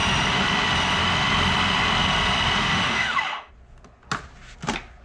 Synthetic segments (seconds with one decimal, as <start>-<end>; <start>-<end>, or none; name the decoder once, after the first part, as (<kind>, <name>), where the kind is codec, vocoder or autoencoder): 2.6-3.5 (autoencoder, DAC-VAE)